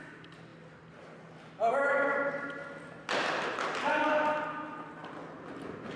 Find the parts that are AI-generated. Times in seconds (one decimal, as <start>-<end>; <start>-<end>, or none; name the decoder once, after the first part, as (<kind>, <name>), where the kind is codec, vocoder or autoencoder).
none